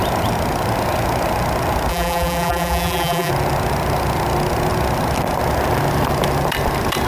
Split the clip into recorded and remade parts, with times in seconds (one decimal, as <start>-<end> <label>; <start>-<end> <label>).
0.0-1.9 recorded; 1.9-3.3 remade; 3.3-7.1 recorded